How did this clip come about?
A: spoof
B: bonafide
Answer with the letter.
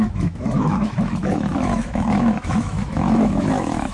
A